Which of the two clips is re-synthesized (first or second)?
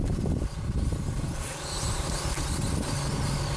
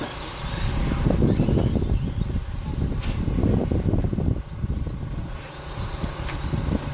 first